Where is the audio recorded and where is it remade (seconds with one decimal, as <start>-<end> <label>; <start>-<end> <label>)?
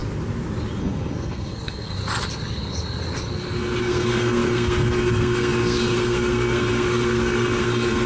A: 0.0-0.8 recorded; 0.8-2.0 remade; 2.0-3.8 recorded; 3.8-8.1 remade